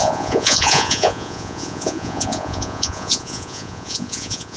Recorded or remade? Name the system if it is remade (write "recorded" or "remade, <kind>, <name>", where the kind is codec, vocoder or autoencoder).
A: remade, vocoder, Vocos